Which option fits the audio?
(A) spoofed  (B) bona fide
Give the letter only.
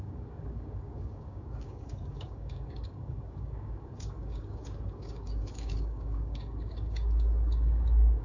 A